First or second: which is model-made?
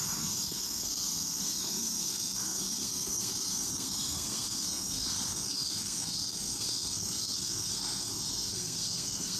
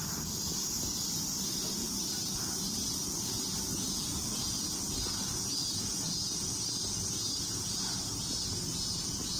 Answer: first